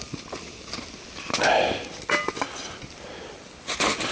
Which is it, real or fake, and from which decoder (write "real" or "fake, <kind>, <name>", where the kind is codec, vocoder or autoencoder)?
real